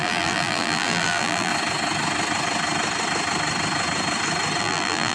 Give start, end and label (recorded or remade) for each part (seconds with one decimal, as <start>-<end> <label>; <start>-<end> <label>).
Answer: 0.0-1.5 remade; 1.5-4.6 recorded; 4.6-5.1 remade